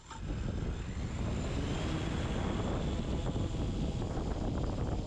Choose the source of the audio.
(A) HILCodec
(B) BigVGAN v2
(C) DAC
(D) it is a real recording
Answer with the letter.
D